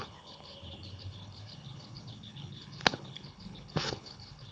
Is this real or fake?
fake